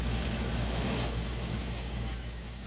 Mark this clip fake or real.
fake